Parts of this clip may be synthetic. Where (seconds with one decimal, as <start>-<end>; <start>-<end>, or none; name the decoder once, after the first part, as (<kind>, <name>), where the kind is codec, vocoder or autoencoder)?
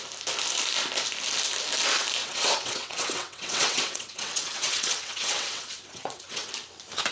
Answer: 2.2-6.5 (vocoder, WaveNeXt)